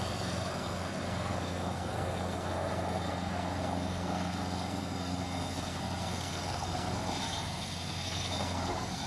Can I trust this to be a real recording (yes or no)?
no